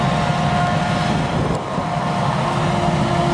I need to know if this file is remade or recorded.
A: recorded